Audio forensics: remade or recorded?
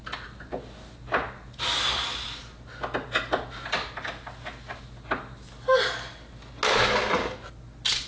recorded